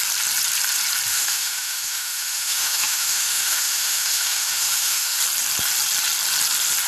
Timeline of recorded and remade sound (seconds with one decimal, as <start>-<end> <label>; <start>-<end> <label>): 0.0-1.1 recorded; 1.1-5.2 remade; 5.2-6.9 recorded

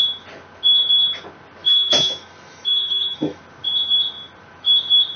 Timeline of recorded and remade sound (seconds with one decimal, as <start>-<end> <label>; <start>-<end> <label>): 0.0-1.6 recorded; 1.6-3.4 remade; 3.4-5.2 recorded

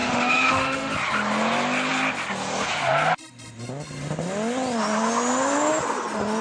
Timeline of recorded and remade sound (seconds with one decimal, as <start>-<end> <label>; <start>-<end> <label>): 0.0-0.9 remade; 0.9-6.4 recorded

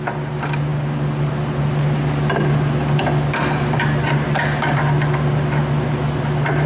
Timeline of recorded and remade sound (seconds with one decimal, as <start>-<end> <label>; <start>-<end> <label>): 0.0-6.7 recorded

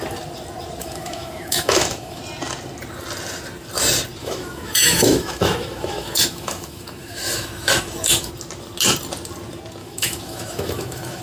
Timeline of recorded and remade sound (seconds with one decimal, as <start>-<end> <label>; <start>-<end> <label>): 0.0-0.8 recorded; 0.8-2.2 remade; 2.2-4.2 recorded; 4.2-8.3 remade; 8.3-9.8 recorded; 9.8-11.2 remade

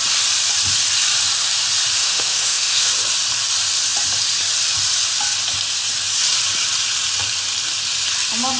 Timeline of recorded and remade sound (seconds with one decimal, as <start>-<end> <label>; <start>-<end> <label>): 0.0-2.0 recorded; 2.0-2.9 remade; 2.9-8.6 recorded